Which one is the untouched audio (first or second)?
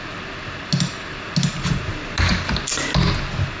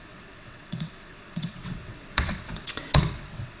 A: first